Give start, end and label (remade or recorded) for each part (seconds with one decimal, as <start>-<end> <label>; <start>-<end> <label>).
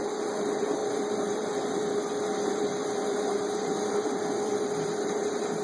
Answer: 0.0-5.6 remade